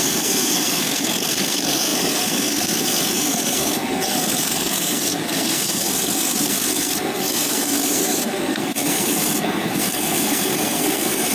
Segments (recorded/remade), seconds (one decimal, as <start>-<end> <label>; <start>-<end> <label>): 0.0-11.3 remade